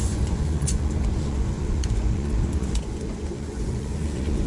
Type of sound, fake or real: fake